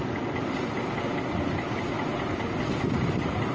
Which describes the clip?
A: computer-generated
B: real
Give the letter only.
B